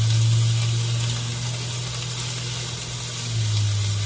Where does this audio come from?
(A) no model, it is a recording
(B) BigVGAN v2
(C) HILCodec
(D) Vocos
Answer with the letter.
A